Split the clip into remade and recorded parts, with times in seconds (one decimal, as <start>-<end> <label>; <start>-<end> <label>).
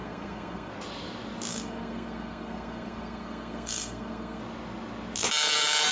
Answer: 0.0-0.7 remade; 0.7-1.5 recorded; 1.5-4.4 remade; 4.4-5.9 recorded